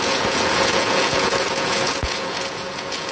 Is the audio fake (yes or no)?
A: yes